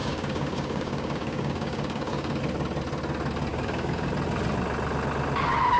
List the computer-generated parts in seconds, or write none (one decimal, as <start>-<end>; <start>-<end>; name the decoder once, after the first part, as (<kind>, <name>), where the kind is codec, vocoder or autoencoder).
0.0-2.4 (codec, DAC); 3.5-4.1